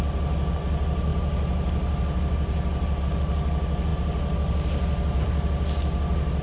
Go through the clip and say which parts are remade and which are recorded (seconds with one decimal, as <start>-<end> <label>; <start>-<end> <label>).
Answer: 0.0-6.4 recorded